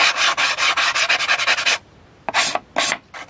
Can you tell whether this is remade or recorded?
recorded